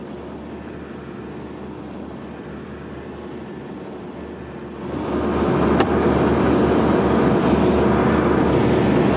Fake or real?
real